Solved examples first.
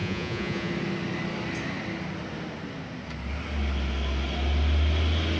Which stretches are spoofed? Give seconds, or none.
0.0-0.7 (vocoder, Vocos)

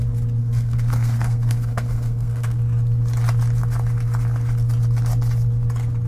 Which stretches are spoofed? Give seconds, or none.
0.4-2.6 (codec, SNAC)

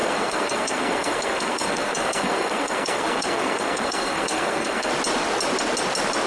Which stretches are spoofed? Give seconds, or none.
0.0-4.9 (codec, SNAC)

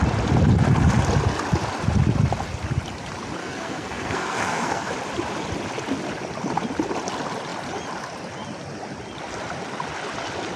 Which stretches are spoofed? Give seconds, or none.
3.4-4.9 (codec, SNAC)

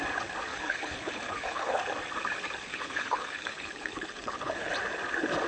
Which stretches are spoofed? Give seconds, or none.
0.5-1.8 (codec, HILCodec); 2.7-4.7

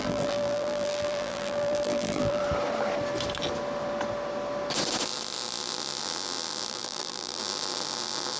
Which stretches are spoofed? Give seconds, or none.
0.0-2.4 (vocoder, BigVGAN v2); 6.7-7.4

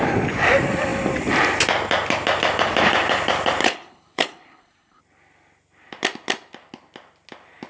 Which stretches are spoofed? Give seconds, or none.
3.6-5.0 (codec, HILCodec)